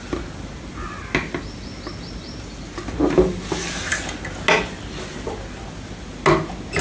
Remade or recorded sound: recorded